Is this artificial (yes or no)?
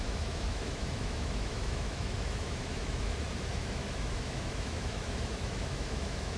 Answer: yes